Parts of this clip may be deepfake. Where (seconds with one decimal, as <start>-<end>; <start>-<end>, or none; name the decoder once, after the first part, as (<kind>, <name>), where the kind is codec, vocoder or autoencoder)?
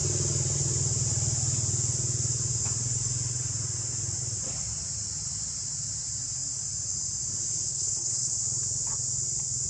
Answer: 7.7-8.3 (codec, HILCodec)